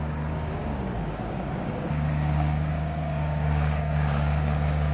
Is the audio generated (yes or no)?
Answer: yes